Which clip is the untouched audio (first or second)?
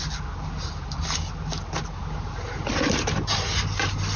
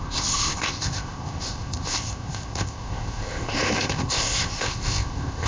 first